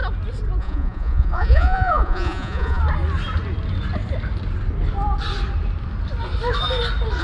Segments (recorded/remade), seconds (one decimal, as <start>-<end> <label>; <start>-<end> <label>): 0.0-0.6 recorded; 0.6-2.8 remade; 2.8-7.2 recorded